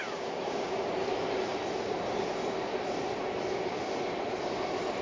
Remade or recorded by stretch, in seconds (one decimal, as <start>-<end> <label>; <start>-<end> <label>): 0.0-0.9 remade; 0.9-5.0 recorded